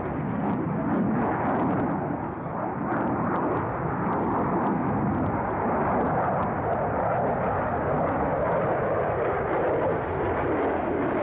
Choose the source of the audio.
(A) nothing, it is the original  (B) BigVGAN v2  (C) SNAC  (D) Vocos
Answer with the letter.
A